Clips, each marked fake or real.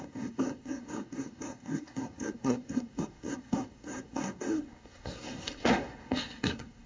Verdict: fake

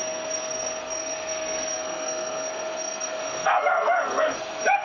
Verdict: fake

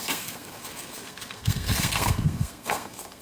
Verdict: fake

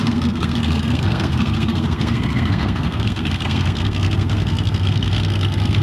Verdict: fake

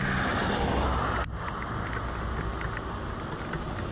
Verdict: real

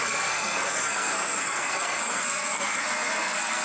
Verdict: fake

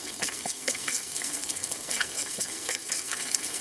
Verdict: fake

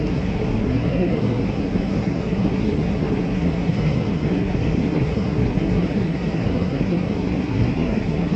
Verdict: fake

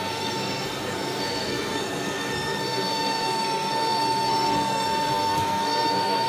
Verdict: fake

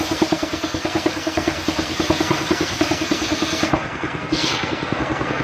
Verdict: fake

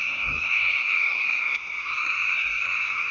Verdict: fake